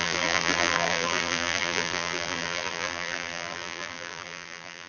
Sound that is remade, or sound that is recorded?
remade